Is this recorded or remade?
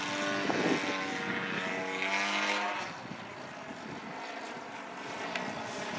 recorded